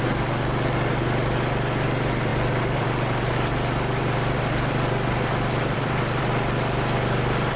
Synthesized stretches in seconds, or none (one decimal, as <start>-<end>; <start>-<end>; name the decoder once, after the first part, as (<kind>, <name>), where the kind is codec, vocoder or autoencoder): 2.3-6.2 (vocoder, BigVGAN v2)